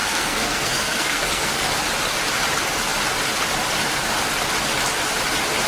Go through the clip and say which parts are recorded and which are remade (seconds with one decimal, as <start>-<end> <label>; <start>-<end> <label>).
0.0-1.7 remade; 1.7-5.7 recorded